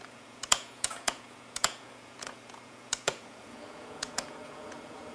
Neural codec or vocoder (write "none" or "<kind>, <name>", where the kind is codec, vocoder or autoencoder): vocoder, Vocos